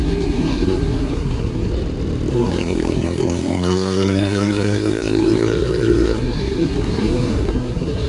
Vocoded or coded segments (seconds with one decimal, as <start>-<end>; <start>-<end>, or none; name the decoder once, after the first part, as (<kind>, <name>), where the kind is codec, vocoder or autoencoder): 0.0-1.7 (codec, SNAC); 2.3-8.1

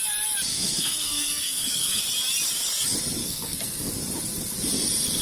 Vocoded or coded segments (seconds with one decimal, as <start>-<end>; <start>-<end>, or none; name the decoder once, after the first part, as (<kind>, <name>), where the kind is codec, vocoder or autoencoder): 0.5-2.0 (codec, SNAC); 3.2-3.9

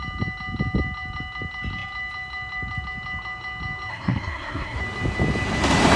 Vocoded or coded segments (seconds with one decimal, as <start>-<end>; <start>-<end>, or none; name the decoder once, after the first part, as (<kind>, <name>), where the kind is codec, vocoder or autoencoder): 3.9-4.8 (codec, SNAC)

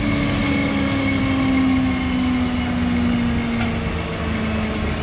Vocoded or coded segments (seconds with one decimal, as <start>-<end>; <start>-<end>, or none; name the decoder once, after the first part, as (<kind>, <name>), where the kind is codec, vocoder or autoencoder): none

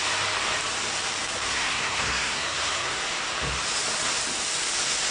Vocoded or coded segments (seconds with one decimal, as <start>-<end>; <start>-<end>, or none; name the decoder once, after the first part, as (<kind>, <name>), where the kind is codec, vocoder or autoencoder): 1.5-3.0 (codec, SNAC)